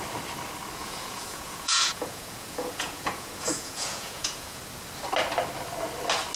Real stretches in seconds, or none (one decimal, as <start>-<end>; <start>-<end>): 0.0-0.8; 4.6-6.4